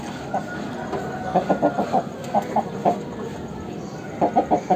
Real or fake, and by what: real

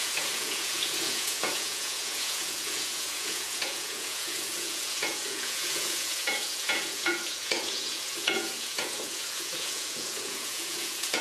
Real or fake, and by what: fake, vocoder, Vocos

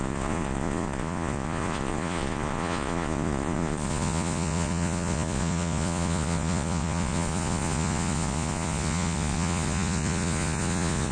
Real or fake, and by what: fake, vocoder, Vocos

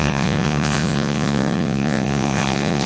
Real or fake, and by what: fake, vocoder, Vocos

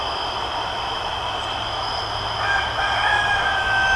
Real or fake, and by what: real